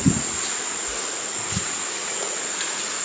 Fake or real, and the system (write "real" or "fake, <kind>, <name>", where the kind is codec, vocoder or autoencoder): fake, vocoder, Vocos